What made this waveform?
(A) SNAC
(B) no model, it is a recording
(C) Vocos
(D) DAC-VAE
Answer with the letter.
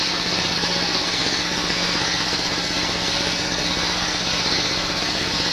A